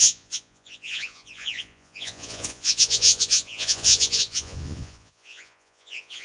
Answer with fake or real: fake